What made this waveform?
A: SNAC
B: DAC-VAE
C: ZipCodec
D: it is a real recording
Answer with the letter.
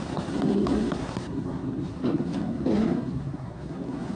A